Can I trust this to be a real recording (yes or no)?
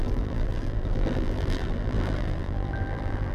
no